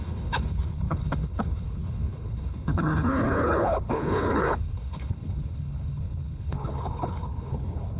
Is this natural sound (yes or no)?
no